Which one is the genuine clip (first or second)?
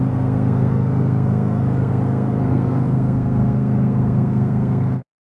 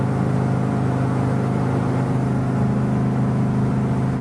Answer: second